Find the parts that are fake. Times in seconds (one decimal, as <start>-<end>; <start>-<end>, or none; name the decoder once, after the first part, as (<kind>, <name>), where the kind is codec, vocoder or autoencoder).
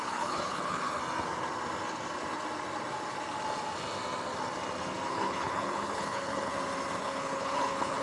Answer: 0.0-1.0 (codec, HILCodec); 5.1-6.5; 7.0-8.0